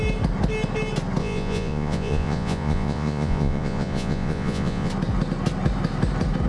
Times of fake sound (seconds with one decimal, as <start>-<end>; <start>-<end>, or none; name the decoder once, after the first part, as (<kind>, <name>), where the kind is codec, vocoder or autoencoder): 1.2-4.9 (vocoder, Vocos)